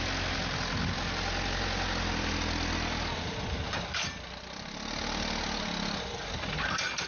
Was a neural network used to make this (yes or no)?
no